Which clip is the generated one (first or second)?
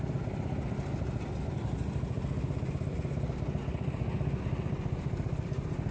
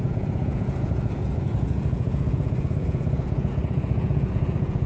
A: second